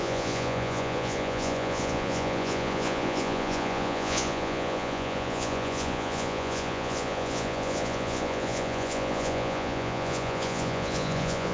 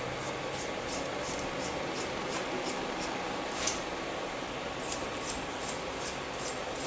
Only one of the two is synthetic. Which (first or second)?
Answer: first